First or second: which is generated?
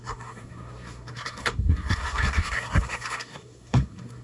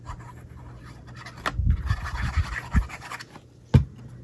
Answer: first